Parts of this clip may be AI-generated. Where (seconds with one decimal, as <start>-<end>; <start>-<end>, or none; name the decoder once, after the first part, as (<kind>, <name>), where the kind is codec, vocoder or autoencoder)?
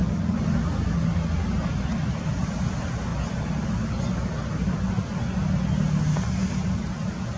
0.0-2.5 (vocoder, BigVGAN v2); 3.1-3.6